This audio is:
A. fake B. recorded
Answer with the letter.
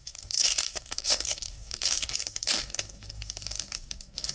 A